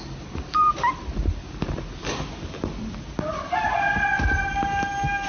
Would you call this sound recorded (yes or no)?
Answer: yes